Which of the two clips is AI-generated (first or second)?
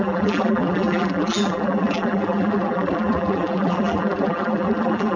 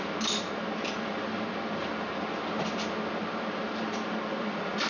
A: first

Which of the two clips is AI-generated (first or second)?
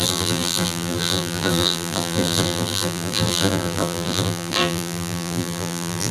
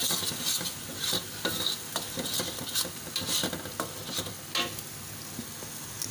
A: first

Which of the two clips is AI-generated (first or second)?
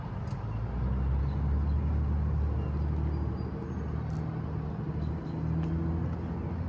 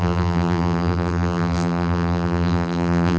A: second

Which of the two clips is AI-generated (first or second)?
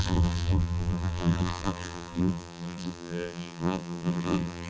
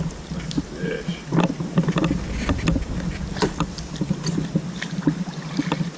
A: first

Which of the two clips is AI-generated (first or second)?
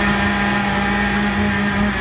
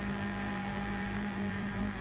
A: second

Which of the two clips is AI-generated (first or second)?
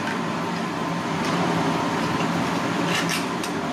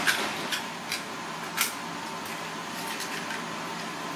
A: first